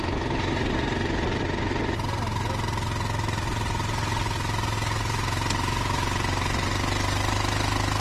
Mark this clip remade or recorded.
recorded